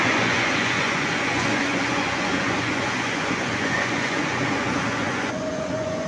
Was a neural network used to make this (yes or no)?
yes